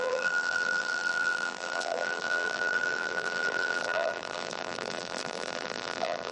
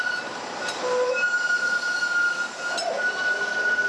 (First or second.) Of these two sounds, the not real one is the first